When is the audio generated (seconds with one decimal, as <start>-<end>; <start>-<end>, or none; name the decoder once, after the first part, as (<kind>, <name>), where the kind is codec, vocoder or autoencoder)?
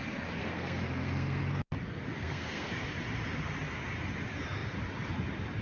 0.4-1.4 (codec, SNAC); 2.2-2.8